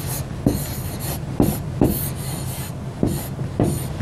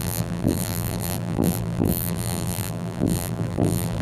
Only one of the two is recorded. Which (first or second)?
first